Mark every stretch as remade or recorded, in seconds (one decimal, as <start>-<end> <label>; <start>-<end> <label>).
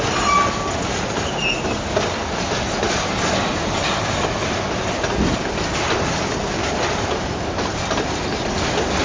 0.0-6.4 recorded; 6.4-7.3 remade; 7.3-9.0 recorded